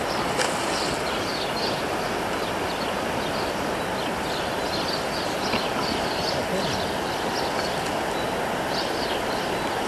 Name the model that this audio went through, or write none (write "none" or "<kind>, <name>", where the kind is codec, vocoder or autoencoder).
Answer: none